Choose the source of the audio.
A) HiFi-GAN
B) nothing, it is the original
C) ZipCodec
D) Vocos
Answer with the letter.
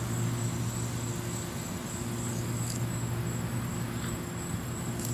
B